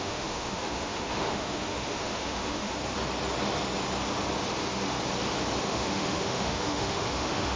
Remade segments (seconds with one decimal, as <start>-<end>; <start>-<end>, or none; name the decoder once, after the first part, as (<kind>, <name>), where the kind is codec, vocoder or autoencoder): 0.0-2.7 (autoencoder, DAC-VAE); 5.6-7.6